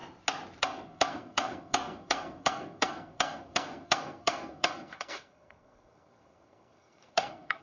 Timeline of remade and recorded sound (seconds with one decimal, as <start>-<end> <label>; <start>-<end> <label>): 0.0-0.6 recorded; 0.6-7.6 remade